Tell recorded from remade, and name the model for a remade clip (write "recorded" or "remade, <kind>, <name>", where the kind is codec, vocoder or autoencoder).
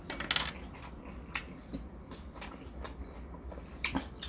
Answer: recorded